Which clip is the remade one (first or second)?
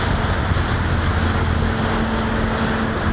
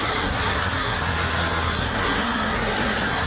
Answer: second